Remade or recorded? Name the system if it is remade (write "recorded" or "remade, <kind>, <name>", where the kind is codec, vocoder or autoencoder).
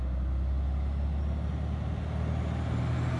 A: recorded